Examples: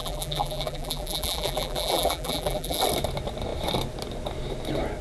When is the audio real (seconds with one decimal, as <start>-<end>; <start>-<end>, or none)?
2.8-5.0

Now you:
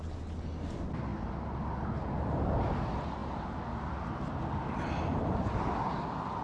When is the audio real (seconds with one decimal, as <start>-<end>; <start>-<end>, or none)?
0.0-6.4

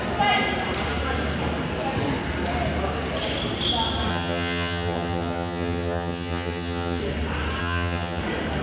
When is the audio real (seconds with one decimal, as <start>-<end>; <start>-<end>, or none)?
0.0-4.1; 7.0-7.6; 8.2-8.6

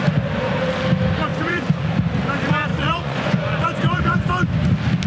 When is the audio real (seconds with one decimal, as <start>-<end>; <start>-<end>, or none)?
0.0-1.3; 1.9-2.7; 4.3-5.1

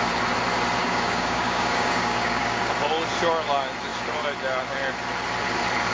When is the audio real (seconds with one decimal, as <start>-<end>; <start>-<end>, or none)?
0.0-0.8; 2.6-5.9

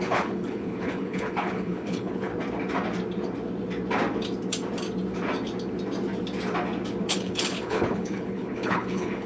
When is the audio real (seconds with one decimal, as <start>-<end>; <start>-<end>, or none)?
2.3-7.1

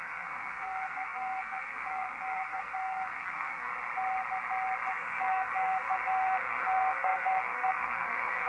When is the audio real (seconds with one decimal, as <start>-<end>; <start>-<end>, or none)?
3.7-4.9